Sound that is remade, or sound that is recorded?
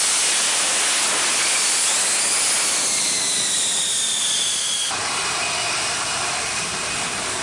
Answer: recorded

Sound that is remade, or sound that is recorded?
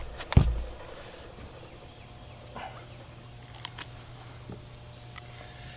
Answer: recorded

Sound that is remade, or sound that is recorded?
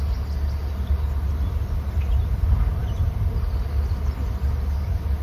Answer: recorded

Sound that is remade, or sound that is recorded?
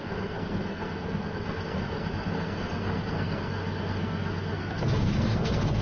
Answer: remade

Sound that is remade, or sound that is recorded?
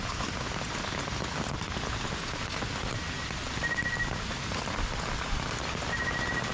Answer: recorded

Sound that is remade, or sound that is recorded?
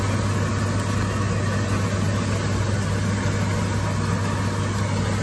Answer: recorded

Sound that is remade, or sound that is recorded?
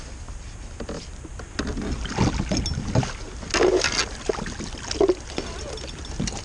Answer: recorded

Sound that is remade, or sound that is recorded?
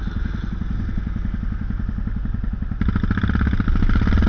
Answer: recorded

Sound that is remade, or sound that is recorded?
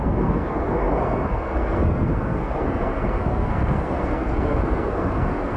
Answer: remade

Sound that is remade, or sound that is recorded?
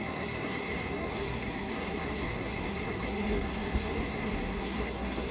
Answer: remade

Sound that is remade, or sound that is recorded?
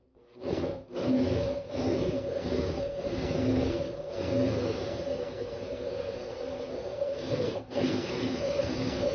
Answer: remade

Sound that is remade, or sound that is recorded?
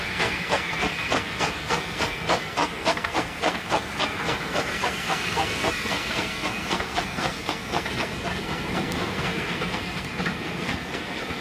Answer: remade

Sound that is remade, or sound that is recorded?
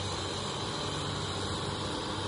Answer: recorded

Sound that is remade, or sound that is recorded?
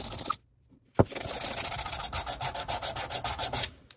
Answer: recorded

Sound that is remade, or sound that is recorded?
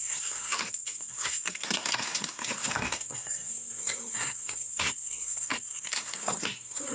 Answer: remade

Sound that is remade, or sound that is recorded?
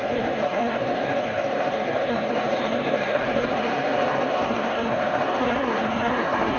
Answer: remade